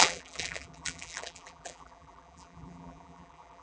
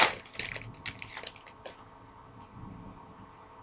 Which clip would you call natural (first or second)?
second